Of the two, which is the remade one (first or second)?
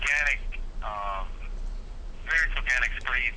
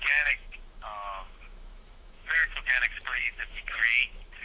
second